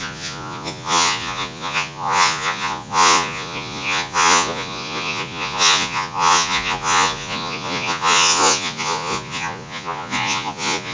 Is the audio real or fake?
fake